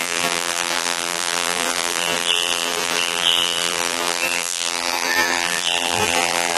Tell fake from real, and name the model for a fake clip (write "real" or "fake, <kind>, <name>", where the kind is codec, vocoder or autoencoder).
fake, vocoder, BigVGAN v2